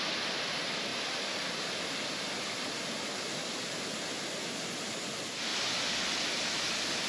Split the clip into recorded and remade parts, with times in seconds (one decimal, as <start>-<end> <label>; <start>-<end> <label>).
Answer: 0.0-7.1 recorded

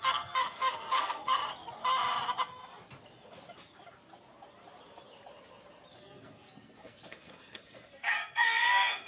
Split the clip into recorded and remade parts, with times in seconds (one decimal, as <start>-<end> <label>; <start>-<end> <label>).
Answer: 0.0-1.4 remade; 1.4-6.0 recorded; 6.0-9.1 remade

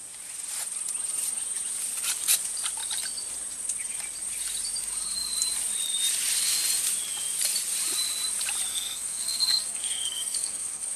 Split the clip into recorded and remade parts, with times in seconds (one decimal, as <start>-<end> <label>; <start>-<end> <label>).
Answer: 0.0-8.7 recorded; 8.7-11.0 remade

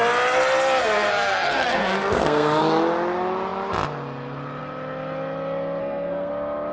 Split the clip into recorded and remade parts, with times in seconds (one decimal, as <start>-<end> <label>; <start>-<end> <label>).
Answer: 0.0-0.8 recorded; 0.8-2.6 remade; 2.6-5.8 recorded; 5.8-6.3 remade; 6.3-6.7 recorded